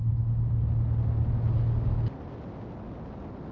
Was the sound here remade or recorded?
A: recorded